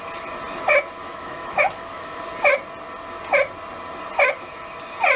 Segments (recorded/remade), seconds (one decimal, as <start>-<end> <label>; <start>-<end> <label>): 0.0-1.0 recorded; 1.0-2.2 remade; 2.2-5.2 recorded